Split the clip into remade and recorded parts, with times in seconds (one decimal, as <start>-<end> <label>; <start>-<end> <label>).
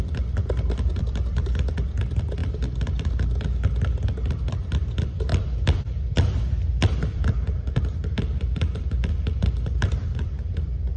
0.0-11.0 remade